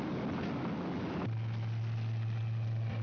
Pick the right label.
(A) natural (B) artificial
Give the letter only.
A